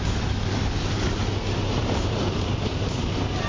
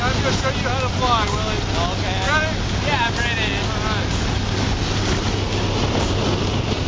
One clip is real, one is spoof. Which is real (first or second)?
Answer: second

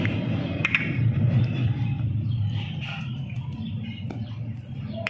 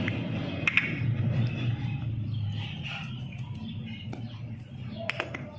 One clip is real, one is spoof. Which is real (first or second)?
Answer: second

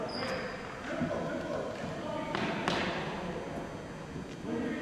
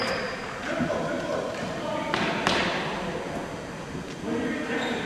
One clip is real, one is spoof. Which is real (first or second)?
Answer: first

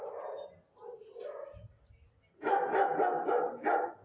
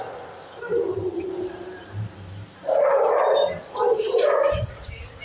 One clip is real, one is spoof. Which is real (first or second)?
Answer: first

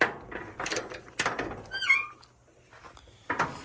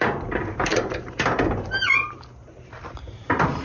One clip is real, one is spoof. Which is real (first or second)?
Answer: first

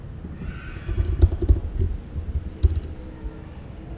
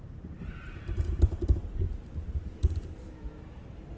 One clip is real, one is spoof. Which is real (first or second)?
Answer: first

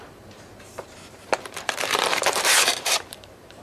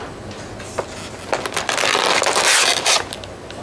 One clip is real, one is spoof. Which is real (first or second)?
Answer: second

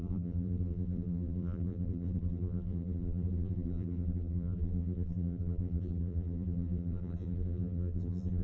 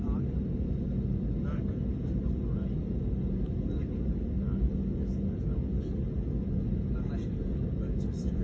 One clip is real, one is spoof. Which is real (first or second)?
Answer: second